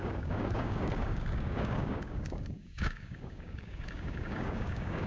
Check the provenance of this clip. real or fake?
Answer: fake